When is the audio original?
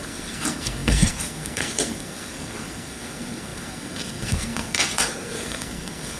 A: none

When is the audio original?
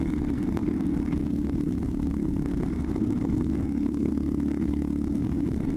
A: none